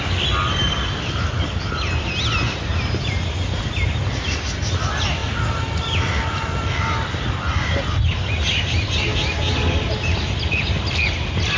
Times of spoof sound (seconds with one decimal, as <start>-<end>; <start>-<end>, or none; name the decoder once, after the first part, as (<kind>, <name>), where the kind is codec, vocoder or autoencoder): none